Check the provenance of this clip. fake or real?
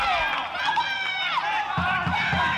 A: real